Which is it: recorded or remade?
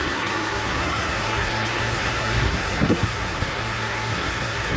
remade